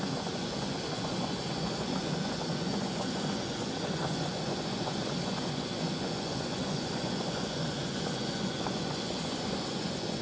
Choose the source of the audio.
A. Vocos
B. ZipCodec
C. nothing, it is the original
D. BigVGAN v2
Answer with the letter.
A